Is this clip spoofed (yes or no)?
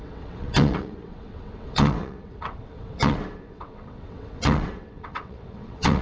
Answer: yes